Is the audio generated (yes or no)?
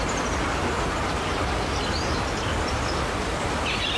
no